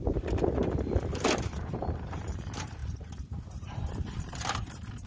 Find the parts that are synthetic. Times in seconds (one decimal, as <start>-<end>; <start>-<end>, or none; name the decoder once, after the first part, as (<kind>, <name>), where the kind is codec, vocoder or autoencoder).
0.0-0.6 (vocoder, BigVGAN v2); 1.6-5.1